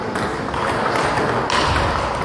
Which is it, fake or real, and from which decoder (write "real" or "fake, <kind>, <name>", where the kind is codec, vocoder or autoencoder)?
real